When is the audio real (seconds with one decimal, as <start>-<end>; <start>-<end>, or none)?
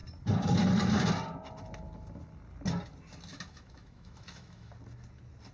0.0-3.3; 4.7-5.5